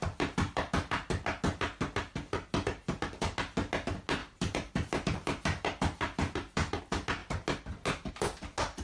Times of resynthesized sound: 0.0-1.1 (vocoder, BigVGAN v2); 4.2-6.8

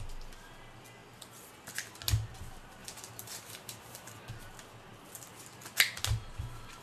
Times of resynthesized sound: 2.8-4.3 (vocoder, BigVGAN v2)

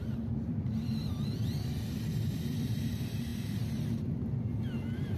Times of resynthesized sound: 0.0-5.2 (vocoder, BigVGAN v2)

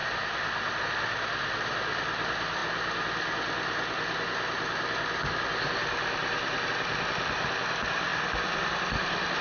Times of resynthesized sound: 0.7-2.6 (vocoder, BigVGAN v2); 6.7-8.1; 8.6-9.4

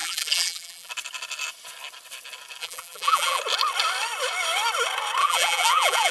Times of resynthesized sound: 0.0-0.9 (vocoder, BigVGAN v2); 2.6-3.4; 5.2-6.1

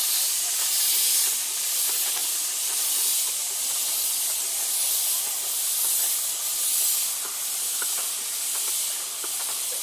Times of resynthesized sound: none

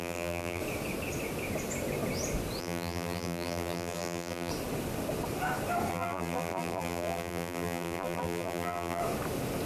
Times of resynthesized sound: 0.0-0.6 (vocoder, BigVGAN v2); 2.6-4.5; 5.9-9.0